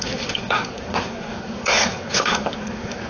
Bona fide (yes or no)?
no